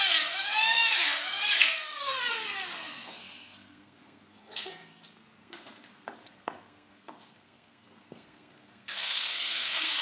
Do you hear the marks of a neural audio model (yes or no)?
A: yes